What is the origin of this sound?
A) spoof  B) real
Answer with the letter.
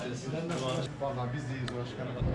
B